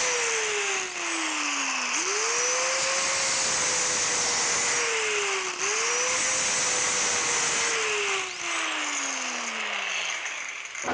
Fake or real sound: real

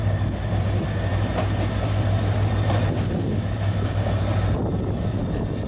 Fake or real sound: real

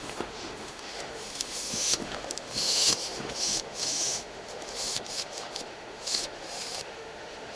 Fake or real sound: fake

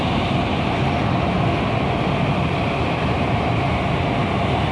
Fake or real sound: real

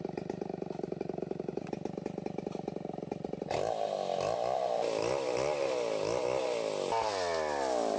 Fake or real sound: real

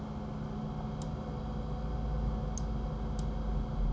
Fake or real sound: real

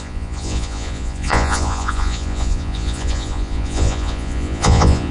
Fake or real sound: fake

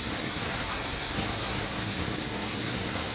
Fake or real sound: fake